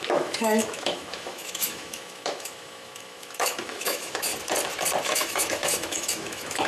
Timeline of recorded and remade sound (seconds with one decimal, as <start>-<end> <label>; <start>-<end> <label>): 0.0-4.3 remade; 4.3-5.0 recorded; 5.0-6.7 remade